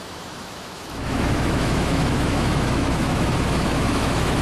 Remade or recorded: remade